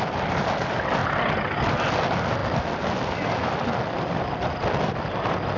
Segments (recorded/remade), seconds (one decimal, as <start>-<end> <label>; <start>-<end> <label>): 0.0-5.6 recorded